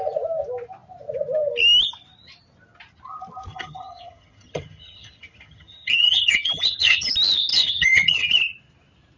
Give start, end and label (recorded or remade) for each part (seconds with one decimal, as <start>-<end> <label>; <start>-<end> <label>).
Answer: 0.0-3.5 recorded; 3.5-7.1 remade; 7.1-7.5 recorded; 7.5-8.4 remade; 8.4-9.2 recorded